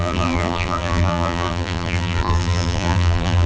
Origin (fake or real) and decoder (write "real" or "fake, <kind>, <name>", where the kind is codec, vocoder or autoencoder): fake, vocoder, BigVGAN v2